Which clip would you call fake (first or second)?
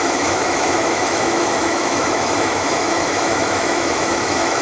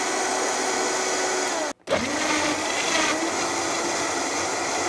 first